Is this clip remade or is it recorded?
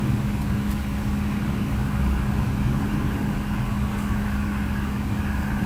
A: remade